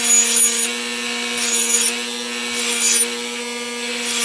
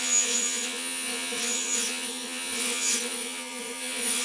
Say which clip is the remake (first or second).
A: second